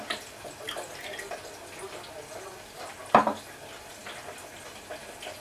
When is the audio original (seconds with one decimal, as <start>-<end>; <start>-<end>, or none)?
0.0-5.4